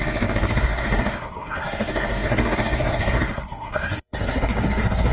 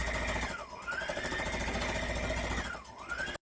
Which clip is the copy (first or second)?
first